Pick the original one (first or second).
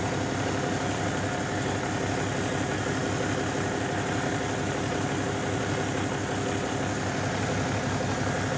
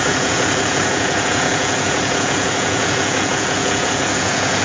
first